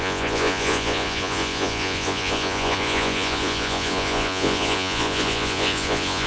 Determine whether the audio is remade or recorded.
remade